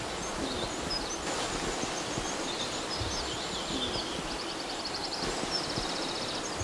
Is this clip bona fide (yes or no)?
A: no